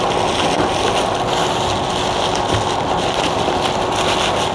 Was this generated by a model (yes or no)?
no